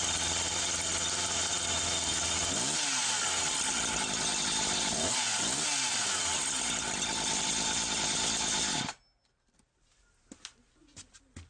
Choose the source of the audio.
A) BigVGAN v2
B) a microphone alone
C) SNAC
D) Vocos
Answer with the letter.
B